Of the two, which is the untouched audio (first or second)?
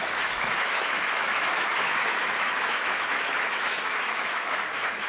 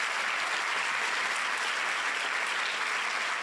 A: second